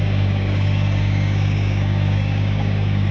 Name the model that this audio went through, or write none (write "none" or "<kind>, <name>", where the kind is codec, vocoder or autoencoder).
codec, DAC